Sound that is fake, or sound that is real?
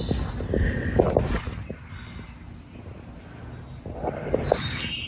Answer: real